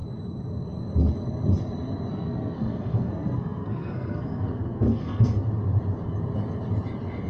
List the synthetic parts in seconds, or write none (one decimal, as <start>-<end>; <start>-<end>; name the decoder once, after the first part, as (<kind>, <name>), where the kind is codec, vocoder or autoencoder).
2.1-5.5 (codec, SNAC)